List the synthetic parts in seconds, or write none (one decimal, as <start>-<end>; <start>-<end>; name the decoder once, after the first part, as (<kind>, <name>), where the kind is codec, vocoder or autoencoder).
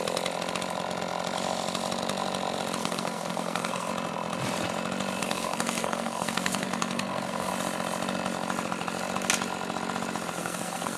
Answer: 2.8-3.9 (codec, SNAC); 5.2-7.5; 10.4-11.0